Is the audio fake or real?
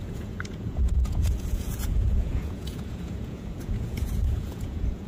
fake